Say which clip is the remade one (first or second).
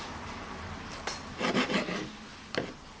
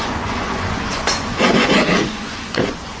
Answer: second